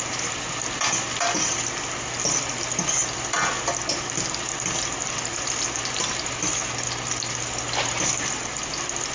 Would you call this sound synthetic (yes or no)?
no